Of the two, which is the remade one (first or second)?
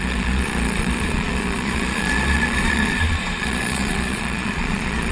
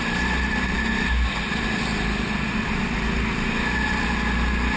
first